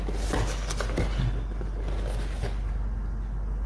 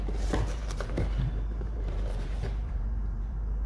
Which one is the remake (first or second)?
second